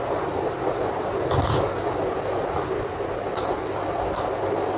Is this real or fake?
real